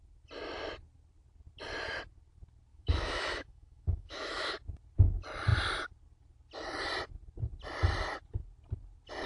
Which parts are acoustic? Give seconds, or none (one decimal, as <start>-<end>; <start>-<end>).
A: 0.0-2.7; 4.5-9.3